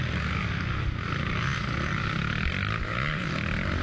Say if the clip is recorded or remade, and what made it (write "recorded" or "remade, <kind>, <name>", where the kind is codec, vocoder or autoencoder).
recorded